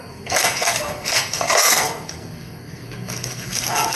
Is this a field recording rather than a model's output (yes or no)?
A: no